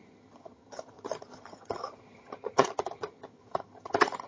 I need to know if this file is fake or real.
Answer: fake